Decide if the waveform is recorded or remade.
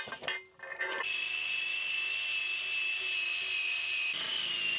recorded